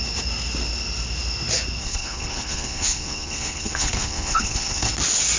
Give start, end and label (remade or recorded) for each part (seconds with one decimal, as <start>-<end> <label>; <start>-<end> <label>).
0.0-1.8 recorded; 1.8-4.9 remade; 4.9-5.4 recorded